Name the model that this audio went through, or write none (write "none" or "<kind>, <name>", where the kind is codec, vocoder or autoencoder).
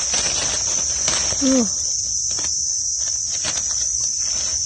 none